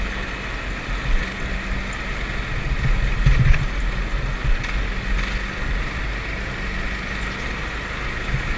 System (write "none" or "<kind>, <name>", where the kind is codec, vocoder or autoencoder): none